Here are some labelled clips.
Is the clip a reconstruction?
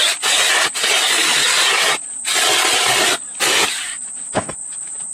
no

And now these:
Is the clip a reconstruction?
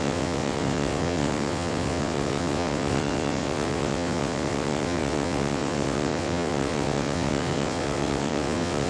yes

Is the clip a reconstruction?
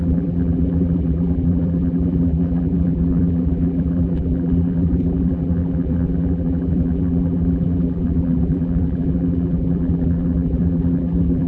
yes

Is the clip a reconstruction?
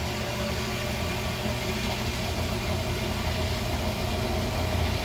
no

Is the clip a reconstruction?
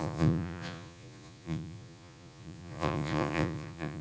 yes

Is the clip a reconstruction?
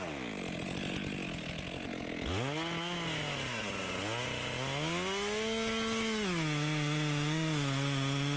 no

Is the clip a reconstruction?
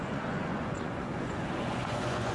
yes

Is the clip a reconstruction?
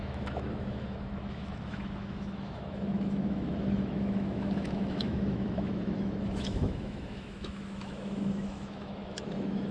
yes